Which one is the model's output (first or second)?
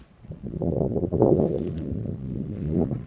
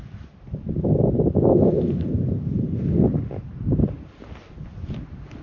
first